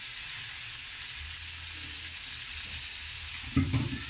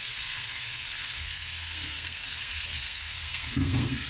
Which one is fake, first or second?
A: second